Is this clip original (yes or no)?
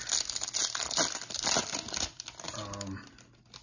yes